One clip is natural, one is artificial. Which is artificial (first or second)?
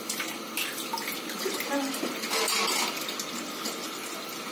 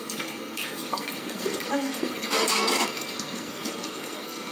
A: second